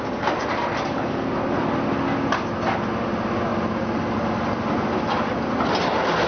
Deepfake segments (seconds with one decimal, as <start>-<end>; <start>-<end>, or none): none